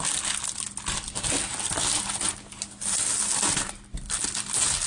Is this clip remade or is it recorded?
recorded